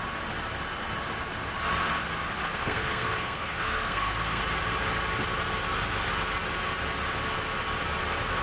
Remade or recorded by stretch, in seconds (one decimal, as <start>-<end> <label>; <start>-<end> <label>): 0.0-2.5 recorded; 2.5-4.4 remade; 4.4-8.4 recorded